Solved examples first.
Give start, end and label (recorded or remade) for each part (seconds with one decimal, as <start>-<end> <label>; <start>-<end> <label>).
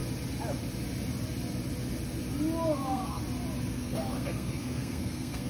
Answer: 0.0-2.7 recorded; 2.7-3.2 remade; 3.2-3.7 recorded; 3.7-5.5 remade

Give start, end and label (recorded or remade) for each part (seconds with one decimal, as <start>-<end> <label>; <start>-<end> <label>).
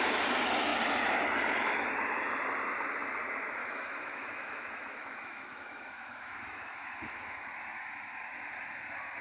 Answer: 0.0-3.6 recorded; 3.6-7.4 remade; 7.4-9.2 recorded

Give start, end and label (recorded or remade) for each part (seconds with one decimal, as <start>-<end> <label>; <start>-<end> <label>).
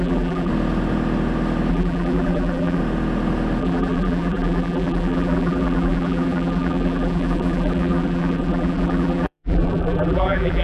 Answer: 0.0-0.5 remade; 0.5-1.7 recorded; 1.7-2.8 remade; 2.8-3.6 recorded; 3.6-10.6 remade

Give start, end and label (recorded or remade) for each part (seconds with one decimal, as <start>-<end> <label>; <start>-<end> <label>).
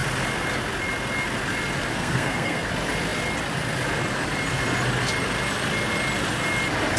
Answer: 0.0-1.9 recorded; 1.9-2.7 remade; 2.7-7.0 recorded